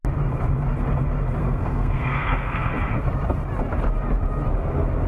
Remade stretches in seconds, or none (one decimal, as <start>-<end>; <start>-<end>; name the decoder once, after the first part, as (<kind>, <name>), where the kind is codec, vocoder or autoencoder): 1.4-2.7 (codec, SNAC)